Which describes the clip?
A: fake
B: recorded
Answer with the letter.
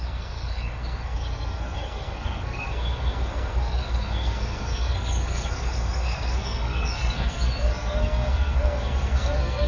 A